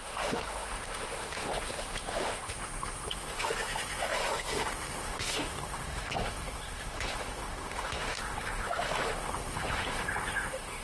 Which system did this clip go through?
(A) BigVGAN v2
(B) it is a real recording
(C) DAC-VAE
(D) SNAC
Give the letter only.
C